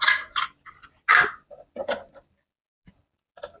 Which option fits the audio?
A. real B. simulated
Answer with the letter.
A